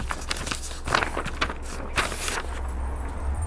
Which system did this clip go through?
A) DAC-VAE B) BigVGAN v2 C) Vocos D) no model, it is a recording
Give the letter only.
D